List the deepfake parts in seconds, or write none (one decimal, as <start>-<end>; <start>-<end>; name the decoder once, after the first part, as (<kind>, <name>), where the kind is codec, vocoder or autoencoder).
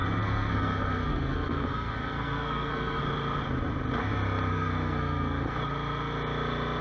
0.0-3.0 (codec, SNAC); 4.5-5.6